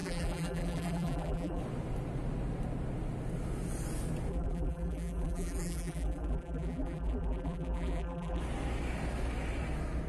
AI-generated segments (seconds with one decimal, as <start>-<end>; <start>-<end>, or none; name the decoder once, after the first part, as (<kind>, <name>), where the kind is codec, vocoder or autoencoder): 0.0-1.6 (vocoder, BigVGAN v2); 4.3-8.4